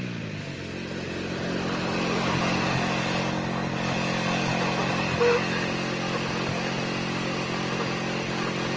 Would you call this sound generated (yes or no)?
no